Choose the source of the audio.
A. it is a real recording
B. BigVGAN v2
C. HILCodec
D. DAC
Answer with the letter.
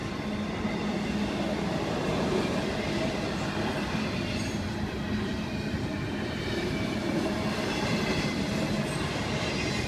A